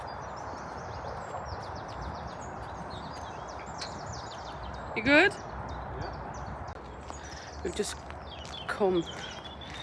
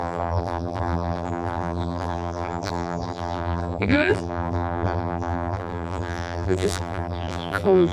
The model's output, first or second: second